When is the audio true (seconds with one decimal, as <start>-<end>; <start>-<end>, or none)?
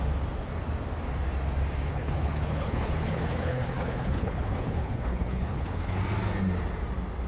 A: 0.0-1.9; 6.0-7.3